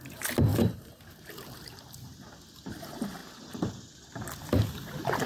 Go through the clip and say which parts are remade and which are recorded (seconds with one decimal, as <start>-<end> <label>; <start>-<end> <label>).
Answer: 0.0-0.5 recorded; 0.5-1.3 remade; 1.3-5.3 recorded